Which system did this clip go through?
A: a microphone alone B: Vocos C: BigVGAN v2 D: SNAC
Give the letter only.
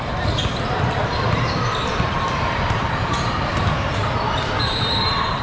C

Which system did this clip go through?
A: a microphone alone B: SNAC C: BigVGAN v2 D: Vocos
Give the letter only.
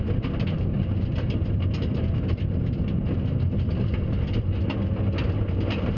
A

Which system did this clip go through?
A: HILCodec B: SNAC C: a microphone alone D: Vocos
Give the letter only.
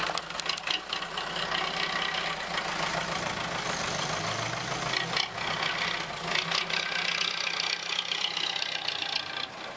C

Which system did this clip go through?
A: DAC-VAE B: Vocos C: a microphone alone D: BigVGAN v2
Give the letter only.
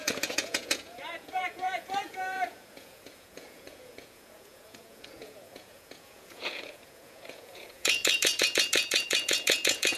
B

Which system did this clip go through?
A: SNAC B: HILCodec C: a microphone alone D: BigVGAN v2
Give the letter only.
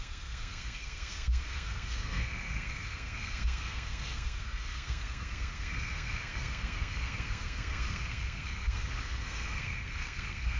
A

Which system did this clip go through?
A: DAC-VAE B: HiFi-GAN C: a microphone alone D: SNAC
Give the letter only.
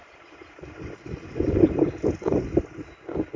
C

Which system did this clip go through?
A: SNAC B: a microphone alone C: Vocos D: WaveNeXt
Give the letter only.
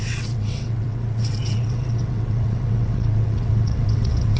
D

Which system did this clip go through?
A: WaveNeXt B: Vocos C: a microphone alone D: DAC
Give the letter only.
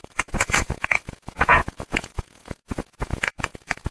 B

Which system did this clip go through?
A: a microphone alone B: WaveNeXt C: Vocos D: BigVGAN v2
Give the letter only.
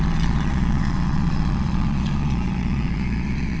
C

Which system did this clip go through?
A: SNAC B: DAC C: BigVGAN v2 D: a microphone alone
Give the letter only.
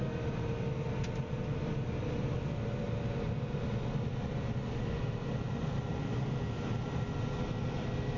D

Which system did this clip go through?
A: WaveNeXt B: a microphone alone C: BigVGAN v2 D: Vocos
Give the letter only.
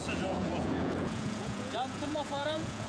D